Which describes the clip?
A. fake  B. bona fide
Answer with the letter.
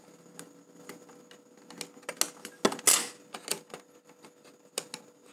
B